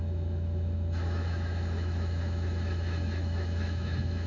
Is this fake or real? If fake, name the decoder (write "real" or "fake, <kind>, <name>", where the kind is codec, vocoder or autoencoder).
fake, autoencoder, DAC-VAE